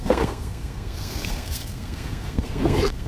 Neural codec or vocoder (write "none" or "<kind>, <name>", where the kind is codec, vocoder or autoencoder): codec, SNAC